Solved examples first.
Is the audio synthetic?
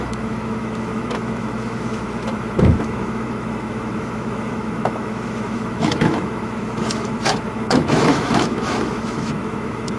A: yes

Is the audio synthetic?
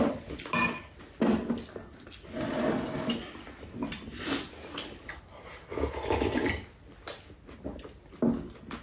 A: no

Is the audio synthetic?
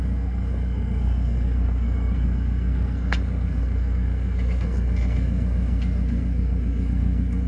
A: yes